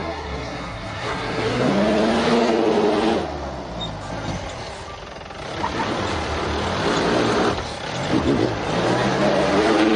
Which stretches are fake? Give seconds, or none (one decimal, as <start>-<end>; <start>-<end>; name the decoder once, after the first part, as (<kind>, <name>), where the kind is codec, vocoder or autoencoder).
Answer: 0.0-1.7 (codec, SNAC)